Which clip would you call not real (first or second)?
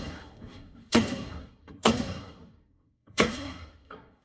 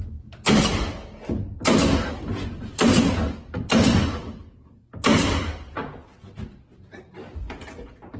first